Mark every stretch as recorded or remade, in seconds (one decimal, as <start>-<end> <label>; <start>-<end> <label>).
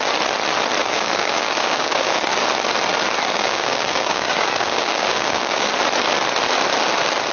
0.0-0.8 recorded; 0.8-2.3 remade; 2.3-3.3 recorded; 3.3-5.7 remade; 5.7-7.3 recorded